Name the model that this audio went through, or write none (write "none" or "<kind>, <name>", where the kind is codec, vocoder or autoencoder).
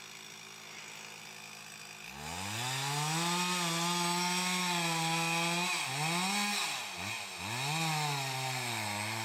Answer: none